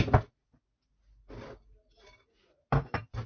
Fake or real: real